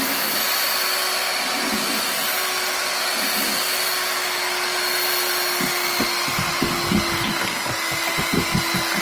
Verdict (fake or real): real